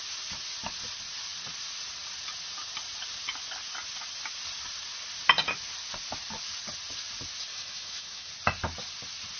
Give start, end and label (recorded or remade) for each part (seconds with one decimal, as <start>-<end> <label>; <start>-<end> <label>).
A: 0.0-7.5 recorded; 7.5-8.3 remade; 8.3-9.4 recorded